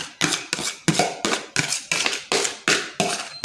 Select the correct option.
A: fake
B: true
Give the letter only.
B